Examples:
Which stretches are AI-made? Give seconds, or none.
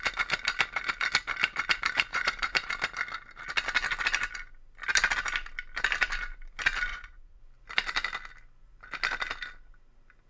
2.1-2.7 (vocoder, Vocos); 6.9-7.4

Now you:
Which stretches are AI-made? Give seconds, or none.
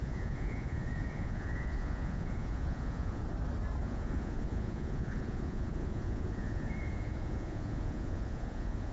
0.0-3.2 (vocoder, Vocos); 3.8-8.9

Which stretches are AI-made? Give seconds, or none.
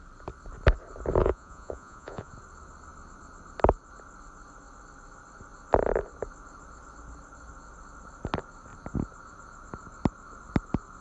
1.2-2.3 (vocoder, Vocos)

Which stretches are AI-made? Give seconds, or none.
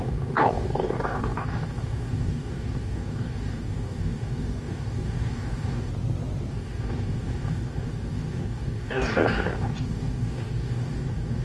0.0-5.9 (codec, DAC); 6.5-11.4